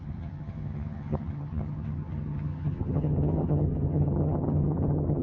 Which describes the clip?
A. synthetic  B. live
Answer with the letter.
A